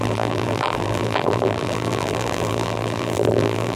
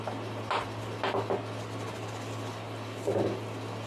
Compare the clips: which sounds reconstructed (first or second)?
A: first